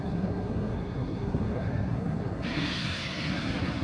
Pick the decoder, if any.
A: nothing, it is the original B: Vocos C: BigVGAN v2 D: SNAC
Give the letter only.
D